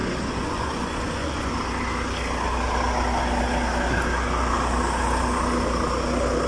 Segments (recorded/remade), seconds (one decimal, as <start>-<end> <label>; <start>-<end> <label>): 0.0-1.5 remade; 1.5-6.5 recorded